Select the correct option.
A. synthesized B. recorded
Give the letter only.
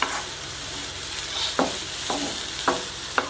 B